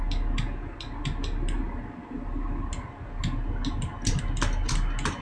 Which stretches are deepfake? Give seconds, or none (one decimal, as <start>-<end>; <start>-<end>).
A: none